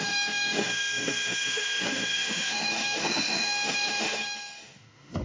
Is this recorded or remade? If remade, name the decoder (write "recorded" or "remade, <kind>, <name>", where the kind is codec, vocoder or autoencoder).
remade, autoencoder, DAC-VAE